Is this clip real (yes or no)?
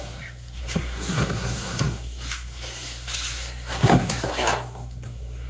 no